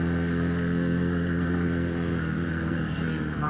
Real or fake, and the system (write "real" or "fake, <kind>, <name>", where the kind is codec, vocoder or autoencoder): fake, codec, SNAC